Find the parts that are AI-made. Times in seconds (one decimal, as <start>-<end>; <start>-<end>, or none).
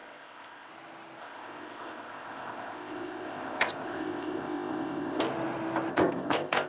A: 0.0-0.7; 1.2-5.2; 5.9-6.7